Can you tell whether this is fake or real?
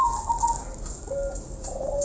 real